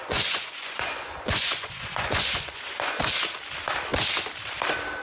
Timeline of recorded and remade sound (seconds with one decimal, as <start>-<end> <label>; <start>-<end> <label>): 0.0-3.0 remade; 3.0-5.0 recorded